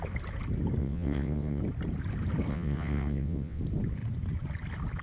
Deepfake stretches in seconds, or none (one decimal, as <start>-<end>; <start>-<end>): 0.8-1.6; 2.5-3.6